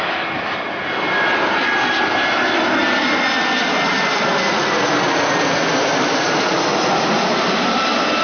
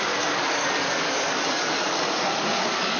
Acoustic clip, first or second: first